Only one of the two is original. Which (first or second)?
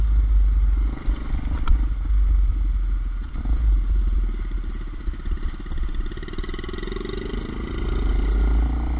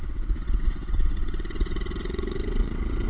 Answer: first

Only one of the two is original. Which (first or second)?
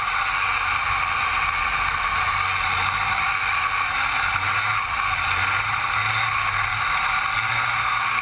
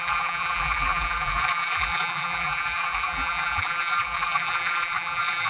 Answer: first